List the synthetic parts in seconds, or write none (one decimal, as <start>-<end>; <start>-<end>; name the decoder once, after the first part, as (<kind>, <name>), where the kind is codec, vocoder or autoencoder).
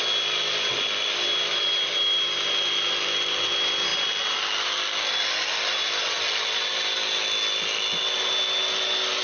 none